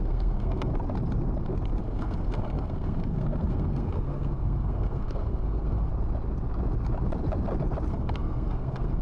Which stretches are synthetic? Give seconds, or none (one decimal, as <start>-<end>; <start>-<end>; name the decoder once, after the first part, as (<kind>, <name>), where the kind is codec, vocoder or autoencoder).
0.0-0.7 (codec, SNAC); 1.8-5.9; 7.9-9.0